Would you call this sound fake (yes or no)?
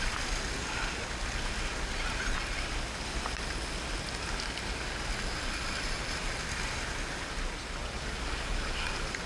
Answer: no